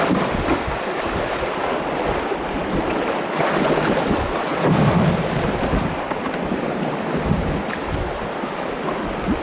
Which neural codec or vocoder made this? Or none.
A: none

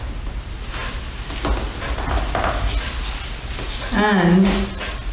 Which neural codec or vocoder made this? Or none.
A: none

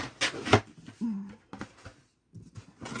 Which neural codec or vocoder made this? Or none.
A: none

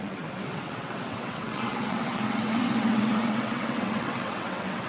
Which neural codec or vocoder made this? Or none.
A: vocoder, WaveNeXt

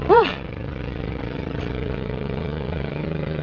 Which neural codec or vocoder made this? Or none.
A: vocoder, WaveNeXt